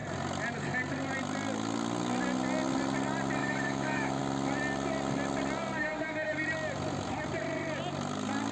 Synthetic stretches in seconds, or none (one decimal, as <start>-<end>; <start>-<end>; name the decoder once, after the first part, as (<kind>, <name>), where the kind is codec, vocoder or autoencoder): 3.4-4.2 (autoencoder, DAC-VAE)